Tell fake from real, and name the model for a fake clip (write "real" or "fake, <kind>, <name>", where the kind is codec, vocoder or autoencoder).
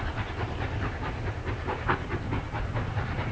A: real